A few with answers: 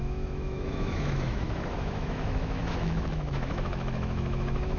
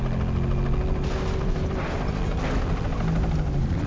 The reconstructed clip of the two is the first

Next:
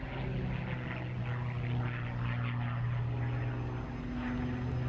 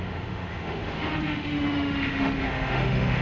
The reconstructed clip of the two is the second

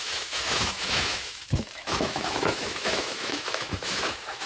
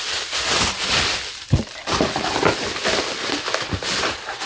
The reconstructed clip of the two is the first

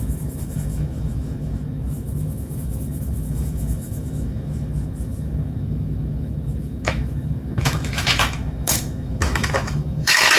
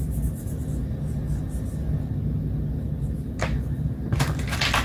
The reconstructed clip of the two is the first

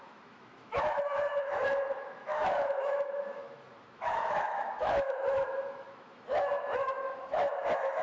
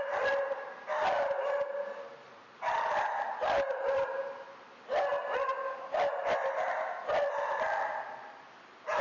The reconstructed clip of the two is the first